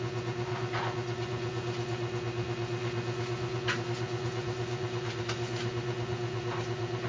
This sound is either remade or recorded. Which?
remade